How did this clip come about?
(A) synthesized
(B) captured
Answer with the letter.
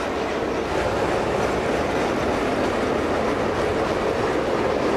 B